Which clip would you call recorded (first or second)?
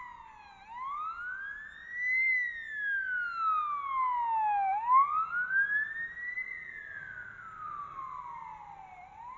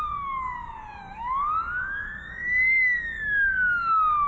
first